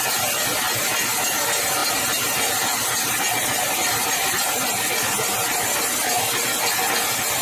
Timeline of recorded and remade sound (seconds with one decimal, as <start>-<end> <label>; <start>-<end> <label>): 0.0-3.3 recorded; 3.3-4.3 remade; 4.3-7.4 recorded